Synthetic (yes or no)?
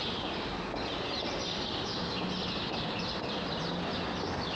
no